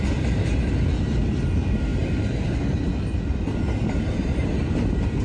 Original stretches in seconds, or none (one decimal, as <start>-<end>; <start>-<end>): 0.0-5.2